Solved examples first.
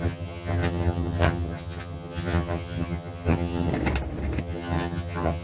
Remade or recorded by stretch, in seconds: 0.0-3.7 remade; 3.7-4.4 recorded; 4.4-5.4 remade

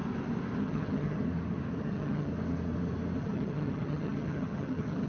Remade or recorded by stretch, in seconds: 0.0-0.6 recorded; 0.6-1.2 remade; 1.2-1.8 recorded; 1.8-2.3 remade; 2.3-3.2 recorded; 3.2-5.1 remade